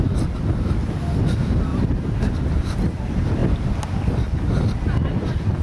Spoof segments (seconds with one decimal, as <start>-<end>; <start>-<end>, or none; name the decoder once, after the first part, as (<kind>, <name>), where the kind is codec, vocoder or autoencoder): 1.7-2.3 (vocoder, BigVGAN v2)